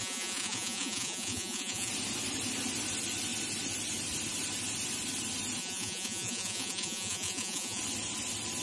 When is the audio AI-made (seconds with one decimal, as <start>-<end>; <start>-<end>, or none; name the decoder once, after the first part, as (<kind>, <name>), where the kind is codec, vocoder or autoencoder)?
0.0-1.9 (vocoder, Vocos); 5.6-7.8